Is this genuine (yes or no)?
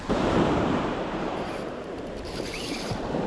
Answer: no